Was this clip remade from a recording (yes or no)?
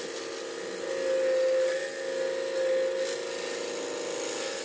no